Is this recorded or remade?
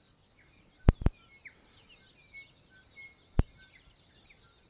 recorded